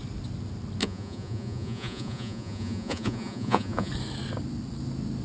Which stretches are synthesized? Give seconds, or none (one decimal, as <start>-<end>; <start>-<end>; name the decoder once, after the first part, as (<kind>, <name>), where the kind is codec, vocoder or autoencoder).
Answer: 0.8-3.9 (vocoder, Vocos)